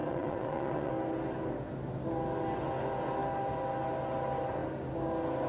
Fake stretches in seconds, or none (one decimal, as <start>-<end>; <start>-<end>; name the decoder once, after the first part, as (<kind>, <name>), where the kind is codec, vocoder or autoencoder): 0.0-0.9 (vocoder, Vocos)